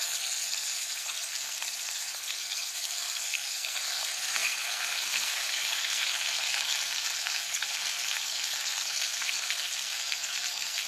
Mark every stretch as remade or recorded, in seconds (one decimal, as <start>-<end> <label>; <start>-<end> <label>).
0.0-10.9 remade